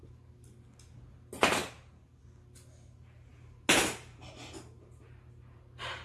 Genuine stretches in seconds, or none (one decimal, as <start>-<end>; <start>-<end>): 0.0-6.0